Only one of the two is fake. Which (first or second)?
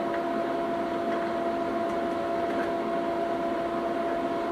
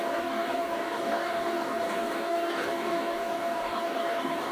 second